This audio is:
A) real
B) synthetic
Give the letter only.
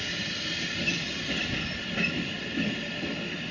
A